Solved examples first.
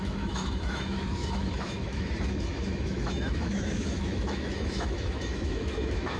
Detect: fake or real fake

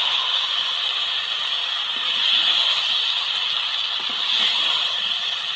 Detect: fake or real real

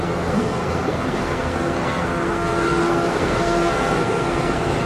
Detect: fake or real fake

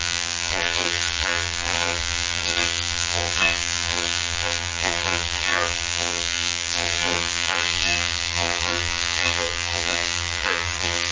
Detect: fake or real fake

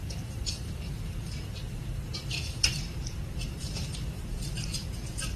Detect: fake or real fake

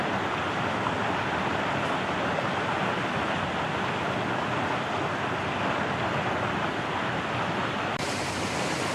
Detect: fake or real real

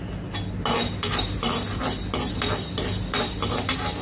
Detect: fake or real real